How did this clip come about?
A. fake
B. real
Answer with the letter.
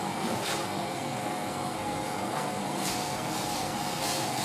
A